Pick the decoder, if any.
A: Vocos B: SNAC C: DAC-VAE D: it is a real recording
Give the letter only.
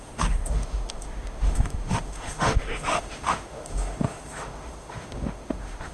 C